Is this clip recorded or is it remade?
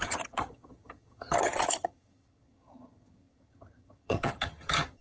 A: remade